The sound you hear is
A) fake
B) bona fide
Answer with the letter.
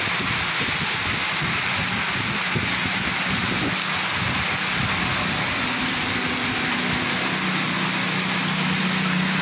B